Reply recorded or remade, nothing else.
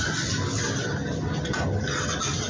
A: recorded